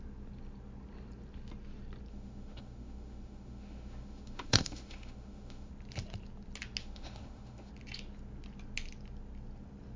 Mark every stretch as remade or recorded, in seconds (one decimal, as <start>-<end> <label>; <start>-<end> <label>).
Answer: 0.0-2.1 recorded; 2.1-5.7 remade; 5.7-6.8 recorded; 6.8-7.7 remade; 7.7-10.0 recorded